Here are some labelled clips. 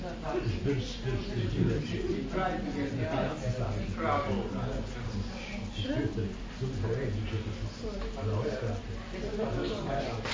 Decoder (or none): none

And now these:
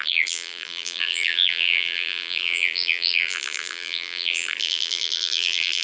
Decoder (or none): vocoder, BigVGAN v2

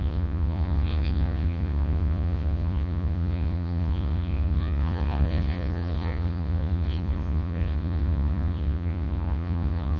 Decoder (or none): vocoder, Vocos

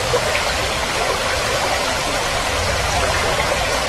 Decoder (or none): none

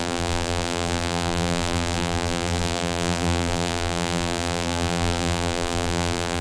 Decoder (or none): vocoder, BigVGAN v2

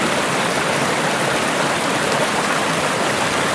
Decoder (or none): none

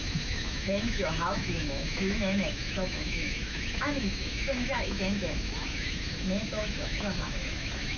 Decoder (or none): autoencoder, DAC-VAE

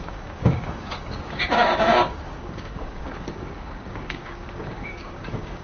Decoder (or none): codec, DAC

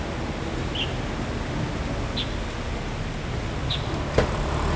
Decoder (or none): none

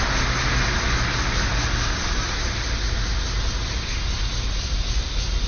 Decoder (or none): none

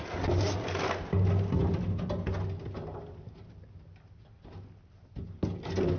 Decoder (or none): none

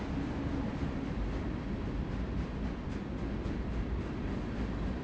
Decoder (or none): none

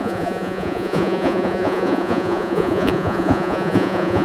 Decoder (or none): vocoder, Vocos